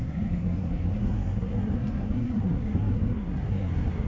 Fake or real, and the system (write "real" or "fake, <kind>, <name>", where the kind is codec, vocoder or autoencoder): fake, codec, SNAC